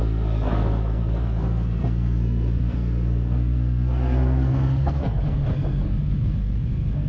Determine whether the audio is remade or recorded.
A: remade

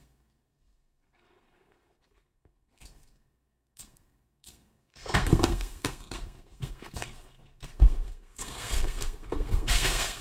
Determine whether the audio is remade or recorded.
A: remade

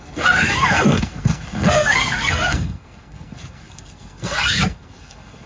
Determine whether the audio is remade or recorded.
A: remade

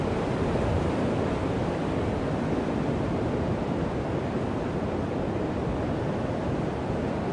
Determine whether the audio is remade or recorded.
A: recorded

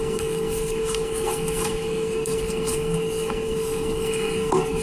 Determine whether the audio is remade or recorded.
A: remade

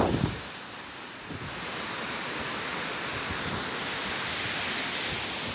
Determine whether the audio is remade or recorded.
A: recorded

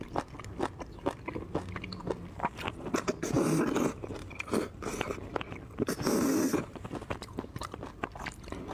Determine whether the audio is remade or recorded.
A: recorded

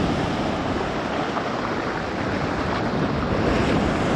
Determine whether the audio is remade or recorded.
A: recorded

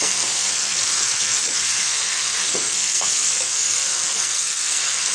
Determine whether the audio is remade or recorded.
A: remade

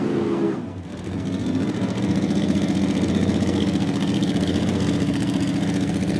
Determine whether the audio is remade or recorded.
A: remade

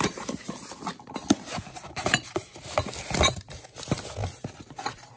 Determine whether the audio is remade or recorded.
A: recorded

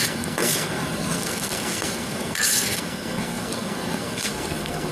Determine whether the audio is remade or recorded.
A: remade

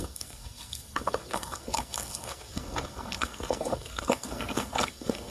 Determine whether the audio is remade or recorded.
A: remade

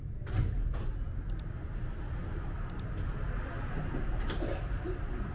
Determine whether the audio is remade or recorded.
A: recorded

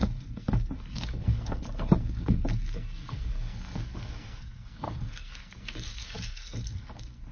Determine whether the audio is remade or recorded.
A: remade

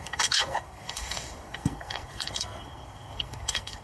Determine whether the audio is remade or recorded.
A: remade